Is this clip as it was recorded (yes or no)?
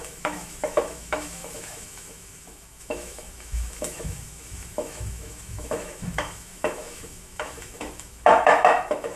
no